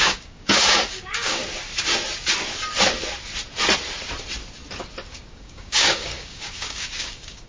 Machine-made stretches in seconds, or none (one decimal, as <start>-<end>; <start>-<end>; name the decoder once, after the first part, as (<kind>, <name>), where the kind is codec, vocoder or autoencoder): 0.0-1.4 (codec, DAC); 5.1-7.5